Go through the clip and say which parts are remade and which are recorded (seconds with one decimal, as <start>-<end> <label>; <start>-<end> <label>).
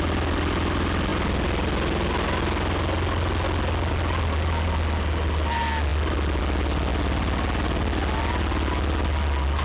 0.0-9.6 recorded